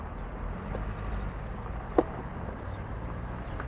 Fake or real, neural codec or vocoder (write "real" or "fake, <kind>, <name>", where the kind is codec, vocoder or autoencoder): real